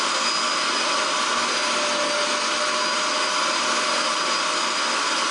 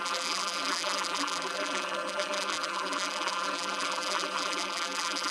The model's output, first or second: second